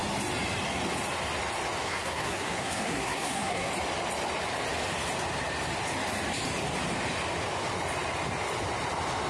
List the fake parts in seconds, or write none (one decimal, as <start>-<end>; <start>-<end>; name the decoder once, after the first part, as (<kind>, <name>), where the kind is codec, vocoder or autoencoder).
1.8-3.7 (codec, SNAC)